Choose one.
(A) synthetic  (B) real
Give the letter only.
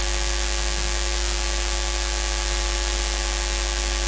B